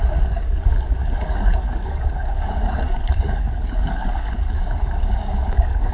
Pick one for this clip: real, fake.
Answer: fake